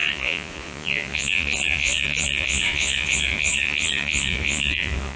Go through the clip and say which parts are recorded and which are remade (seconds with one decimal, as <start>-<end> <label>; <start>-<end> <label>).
0.0-5.2 remade